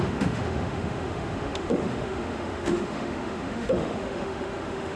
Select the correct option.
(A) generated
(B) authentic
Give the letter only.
A